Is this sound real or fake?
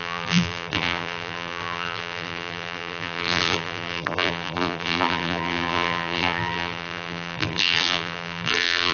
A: fake